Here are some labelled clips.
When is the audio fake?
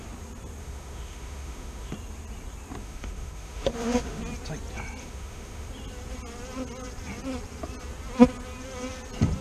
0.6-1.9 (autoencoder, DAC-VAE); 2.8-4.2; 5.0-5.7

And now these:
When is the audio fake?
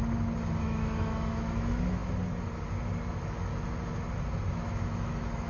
0.6-2.0 (autoencoder, DAC-VAE); 3.1-3.5; 4.5-5.5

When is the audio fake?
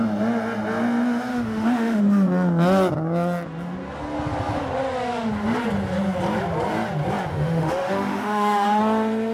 1.3-2.0 (autoencoder, DAC-VAE); 7.3-8.8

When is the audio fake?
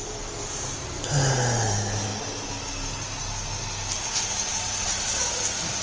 none